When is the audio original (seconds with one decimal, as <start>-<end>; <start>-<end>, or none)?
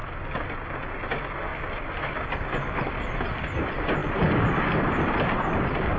0.0-6.0